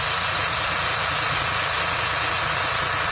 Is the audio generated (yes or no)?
yes